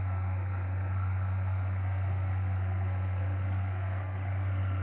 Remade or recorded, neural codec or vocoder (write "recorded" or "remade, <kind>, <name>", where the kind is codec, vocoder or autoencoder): remade, codec, SNAC